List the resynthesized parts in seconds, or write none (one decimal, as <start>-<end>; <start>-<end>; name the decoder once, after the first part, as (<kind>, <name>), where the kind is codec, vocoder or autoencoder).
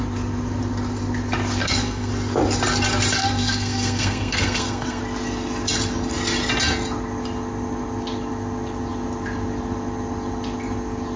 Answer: 1.6-2.1 (codec, SNAC); 3.2-5.0